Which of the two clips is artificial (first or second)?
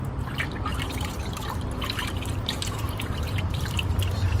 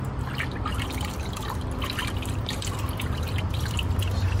first